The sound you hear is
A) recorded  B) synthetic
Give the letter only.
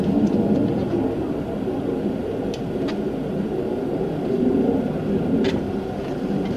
A